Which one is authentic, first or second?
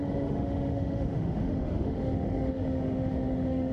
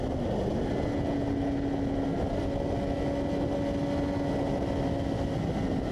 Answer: second